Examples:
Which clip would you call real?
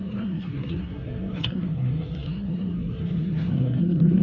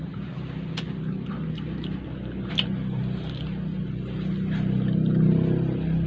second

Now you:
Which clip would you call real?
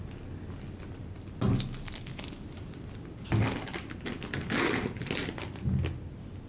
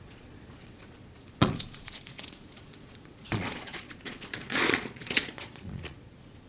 first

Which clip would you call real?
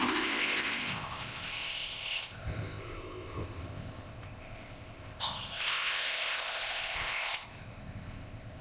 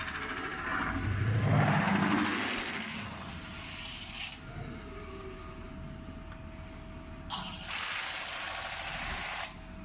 second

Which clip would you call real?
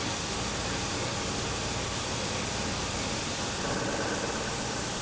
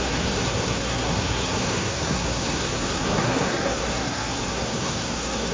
first